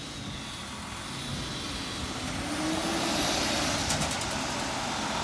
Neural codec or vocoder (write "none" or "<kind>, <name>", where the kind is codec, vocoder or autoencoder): none